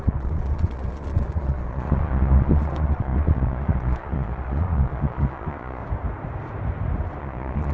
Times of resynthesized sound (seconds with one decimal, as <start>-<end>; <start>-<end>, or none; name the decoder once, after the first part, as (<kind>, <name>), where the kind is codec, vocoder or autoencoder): 0.0-5.8 (vocoder, Vocos); 7.2-7.7